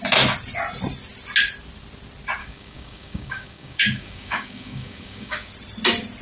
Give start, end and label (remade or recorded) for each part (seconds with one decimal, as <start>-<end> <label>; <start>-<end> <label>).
0.0-2.4 recorded; 2.4-5.5 remade; 5.5-6.2 recorded